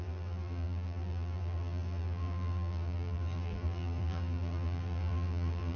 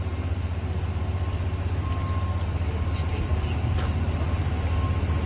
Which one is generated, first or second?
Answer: first